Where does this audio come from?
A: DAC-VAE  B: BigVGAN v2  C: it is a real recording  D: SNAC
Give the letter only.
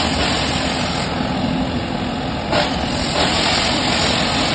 C